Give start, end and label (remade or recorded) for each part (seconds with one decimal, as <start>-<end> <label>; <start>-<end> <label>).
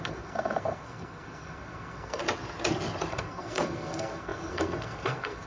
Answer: 0.0-2.2 remade; 2.2-3.1 recorded; 3.1-5.5 remade